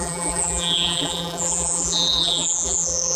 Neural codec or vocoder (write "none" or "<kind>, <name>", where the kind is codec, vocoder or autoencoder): vocoder, BigVGAN v2